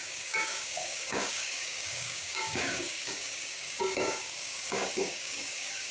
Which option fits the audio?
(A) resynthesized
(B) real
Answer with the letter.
A